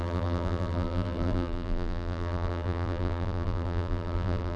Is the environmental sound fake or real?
fake